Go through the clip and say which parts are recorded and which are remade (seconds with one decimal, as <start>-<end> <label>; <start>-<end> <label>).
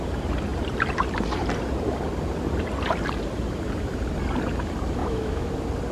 0.0-5.0 recorded; 5.0-5.5 remade; 5.5-5.9 recorded